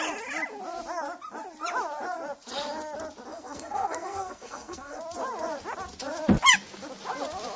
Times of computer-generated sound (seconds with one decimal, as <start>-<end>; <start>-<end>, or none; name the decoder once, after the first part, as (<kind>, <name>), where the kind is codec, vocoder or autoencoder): 3.3-5.0 (codec, SNAC)